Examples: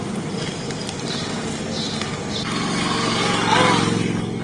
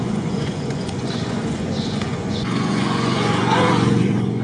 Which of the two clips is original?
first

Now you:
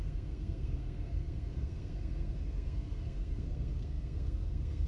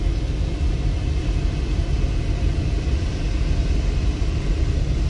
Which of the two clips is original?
second